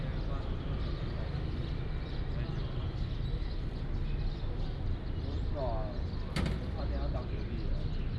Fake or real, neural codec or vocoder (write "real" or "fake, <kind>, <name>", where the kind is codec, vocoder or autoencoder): real